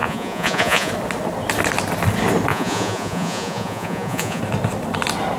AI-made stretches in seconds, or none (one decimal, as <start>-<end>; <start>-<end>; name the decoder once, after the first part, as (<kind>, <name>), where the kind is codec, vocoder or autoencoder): 0.0-0.9 (vocoder, Vocos); 2.5-4.4